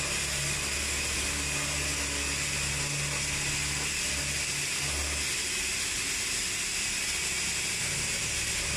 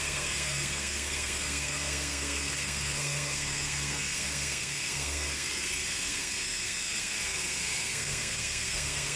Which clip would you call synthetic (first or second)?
second